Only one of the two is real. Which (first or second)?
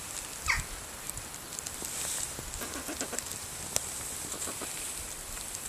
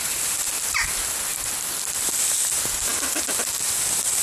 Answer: second